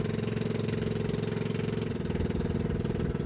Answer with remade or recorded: recorded